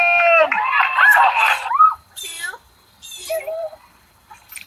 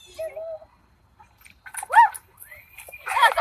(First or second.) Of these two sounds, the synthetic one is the first